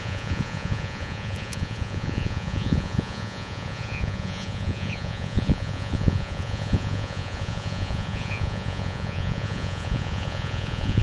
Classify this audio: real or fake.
fake